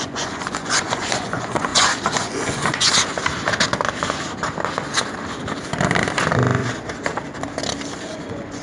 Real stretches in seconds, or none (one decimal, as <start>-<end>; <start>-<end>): 2.9-8.1